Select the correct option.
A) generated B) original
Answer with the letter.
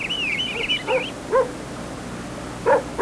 B